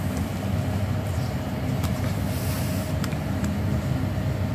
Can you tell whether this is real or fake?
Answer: real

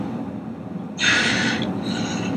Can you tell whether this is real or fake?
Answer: real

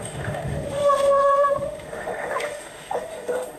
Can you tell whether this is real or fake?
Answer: fake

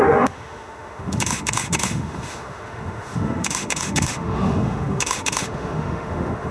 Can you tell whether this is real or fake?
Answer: fake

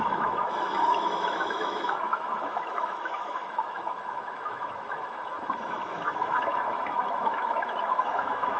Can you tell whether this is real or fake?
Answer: fake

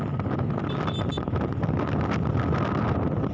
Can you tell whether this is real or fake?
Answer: real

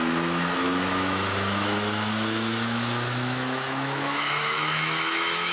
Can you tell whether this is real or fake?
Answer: fake